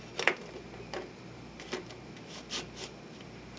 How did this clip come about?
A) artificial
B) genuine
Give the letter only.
B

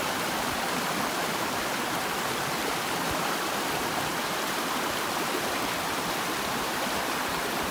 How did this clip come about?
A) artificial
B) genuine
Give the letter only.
A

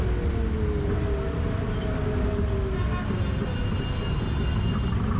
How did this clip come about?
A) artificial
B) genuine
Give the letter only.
B